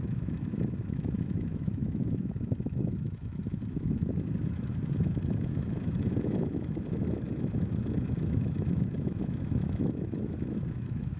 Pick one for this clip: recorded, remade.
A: remade